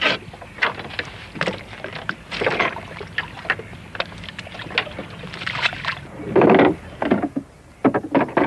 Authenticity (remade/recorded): recorded